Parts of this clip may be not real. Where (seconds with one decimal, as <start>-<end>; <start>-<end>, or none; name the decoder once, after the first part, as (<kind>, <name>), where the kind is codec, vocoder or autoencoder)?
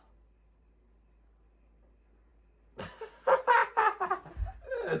3.6-4.3 (vocoder, BigVGAN v2)